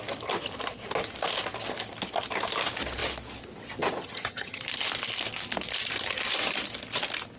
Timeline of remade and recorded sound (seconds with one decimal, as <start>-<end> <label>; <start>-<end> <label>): 0.0-4.0 recorded; 4.0-4.6 remade; 4.6-7.4 recorded